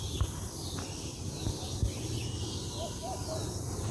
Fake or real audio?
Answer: real